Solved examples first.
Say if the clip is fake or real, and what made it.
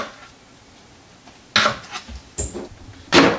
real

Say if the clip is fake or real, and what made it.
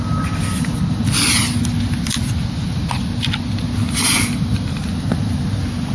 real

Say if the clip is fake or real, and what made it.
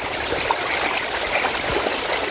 real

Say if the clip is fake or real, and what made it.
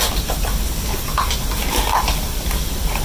real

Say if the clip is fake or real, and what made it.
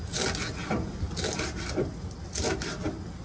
real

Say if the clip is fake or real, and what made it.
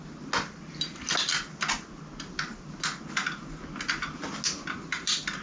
real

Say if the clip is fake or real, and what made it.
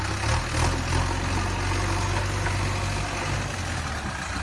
real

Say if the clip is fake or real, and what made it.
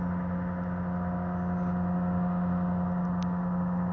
real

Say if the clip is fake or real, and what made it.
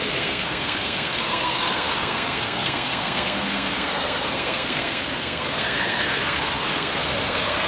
fake, codec, SNAC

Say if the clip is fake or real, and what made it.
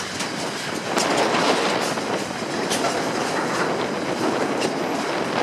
real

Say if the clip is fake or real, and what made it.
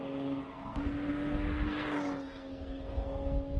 fake, codec, SNAC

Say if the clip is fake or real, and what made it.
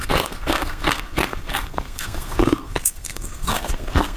fake, codec, SNAC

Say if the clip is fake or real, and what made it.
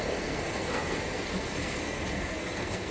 fake, codec, SNAC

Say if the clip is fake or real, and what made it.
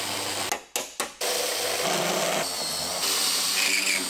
real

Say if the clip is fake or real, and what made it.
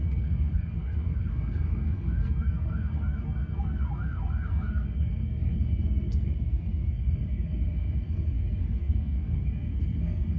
fake, codec, SNAC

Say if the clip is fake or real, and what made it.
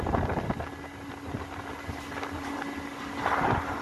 real